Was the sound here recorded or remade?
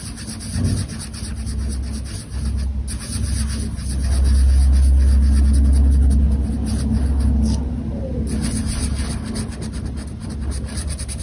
recorded